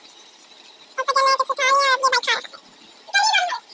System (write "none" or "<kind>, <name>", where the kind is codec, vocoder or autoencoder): vocoder, BigVGAN v2